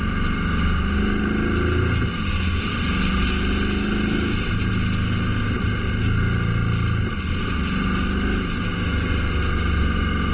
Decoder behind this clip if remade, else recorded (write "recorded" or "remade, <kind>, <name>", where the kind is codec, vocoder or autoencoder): recorded